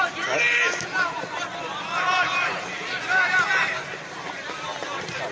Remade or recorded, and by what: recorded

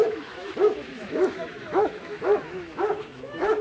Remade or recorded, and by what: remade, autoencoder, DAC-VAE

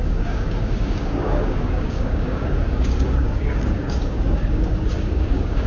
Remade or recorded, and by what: remade, codec, DAC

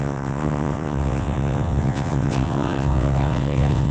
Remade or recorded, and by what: remade, vocoder, WaveNeXt